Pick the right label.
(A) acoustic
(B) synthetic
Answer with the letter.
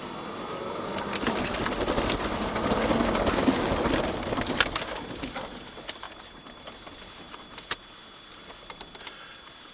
A